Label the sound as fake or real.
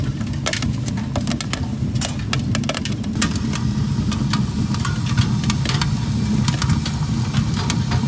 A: real